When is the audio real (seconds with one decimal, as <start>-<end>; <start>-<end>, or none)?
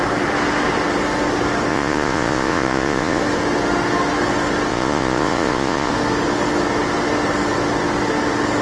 0.0-1.7; 3.2-4.7; 5.9-8.6